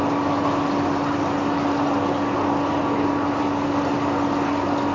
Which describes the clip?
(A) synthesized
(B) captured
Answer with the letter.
B